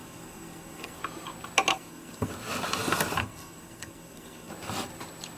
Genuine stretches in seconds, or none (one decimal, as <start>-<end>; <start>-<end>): 1.0-1.7; 2.3-3.2; 4.5-5.4